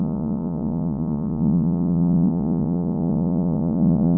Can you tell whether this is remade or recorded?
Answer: remade